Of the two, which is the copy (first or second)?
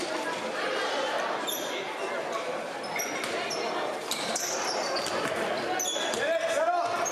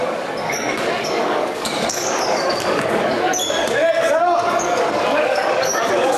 second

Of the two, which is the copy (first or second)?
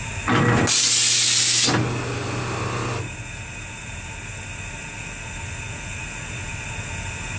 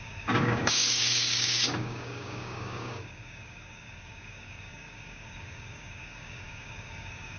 second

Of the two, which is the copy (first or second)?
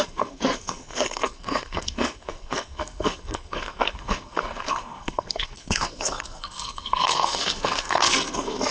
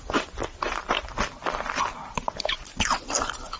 first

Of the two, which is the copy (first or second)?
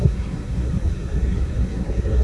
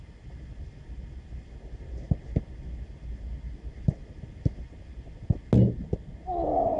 first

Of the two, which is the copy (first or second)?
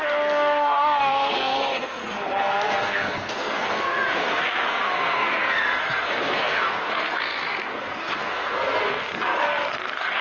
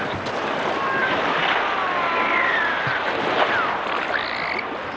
first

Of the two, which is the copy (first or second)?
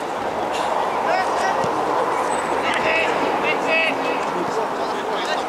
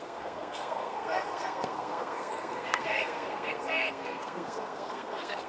second